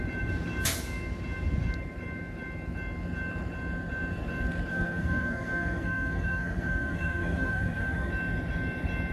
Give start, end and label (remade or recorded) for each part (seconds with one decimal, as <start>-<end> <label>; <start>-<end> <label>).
0.0-4.7 recorded; 4.7-8.1 remade; 8.1-9.1 recorded